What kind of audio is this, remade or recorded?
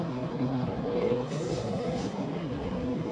remade